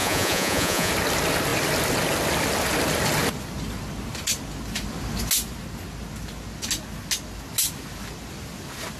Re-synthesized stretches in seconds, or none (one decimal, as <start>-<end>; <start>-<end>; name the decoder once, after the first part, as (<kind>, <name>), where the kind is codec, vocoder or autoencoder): 0.0-0.9 (vocoder, Vocos)